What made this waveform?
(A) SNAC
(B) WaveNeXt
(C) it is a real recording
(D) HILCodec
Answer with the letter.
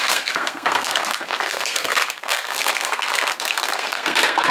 A